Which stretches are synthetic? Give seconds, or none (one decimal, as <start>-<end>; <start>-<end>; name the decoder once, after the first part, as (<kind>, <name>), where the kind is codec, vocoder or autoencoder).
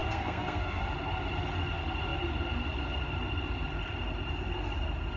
0.0-0.8 (codec, SNAC)